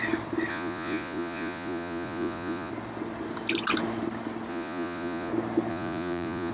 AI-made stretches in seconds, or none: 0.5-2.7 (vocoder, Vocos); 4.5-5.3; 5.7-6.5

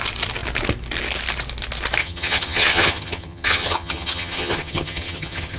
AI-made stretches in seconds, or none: 2.0-5.6 (vocoder, HiFi-GAN)

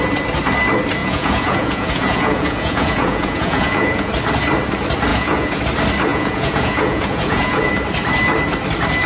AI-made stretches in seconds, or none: 1.0-4.1 (vocoder, Vocos); 5.1-5.6; 6.1-7.7